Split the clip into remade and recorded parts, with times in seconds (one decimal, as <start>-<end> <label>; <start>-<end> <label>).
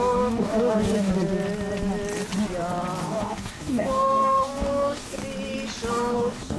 0.0-1.1 remade; 1.1-3.0 recorded; 3.0-5.2 remade; 5.2-5.9 recorded; 5.9-6.6 remade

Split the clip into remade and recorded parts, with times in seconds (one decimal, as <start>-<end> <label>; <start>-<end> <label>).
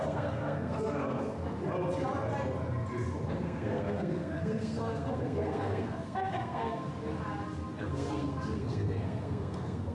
0.0-1.4 remade; 1.4-3.3 recorded; 3.3-6.9 remade; 6.9-7.8 recorded; 7.8-9.9 remade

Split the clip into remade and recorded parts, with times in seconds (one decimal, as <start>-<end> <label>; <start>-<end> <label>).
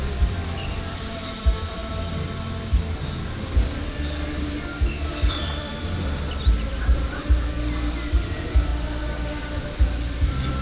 0.0-1.8 remade; 1.8-5.3 recorded; 5.3-8.7 remade; 8.7-9.4 recorded; 9.4-10.6 remade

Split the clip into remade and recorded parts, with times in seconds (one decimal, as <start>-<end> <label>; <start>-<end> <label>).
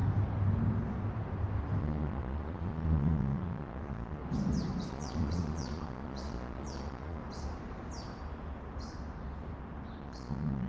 0.0-1.8 recorded; 1.8-4.2 remade; 4.2-4.9 recorded; 4.9-7.2 remade; 7.2-10.0 recorded; 10.0-10.7 remade